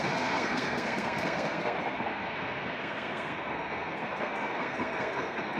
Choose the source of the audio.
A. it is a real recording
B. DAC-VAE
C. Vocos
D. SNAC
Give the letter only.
D